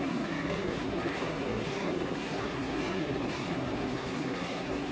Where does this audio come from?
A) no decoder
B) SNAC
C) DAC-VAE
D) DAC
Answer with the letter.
B